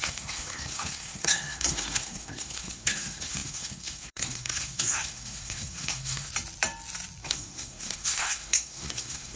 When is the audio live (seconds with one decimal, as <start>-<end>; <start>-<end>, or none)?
6.3-7.2